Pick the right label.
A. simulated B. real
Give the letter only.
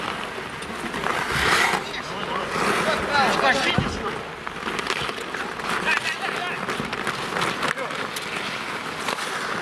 B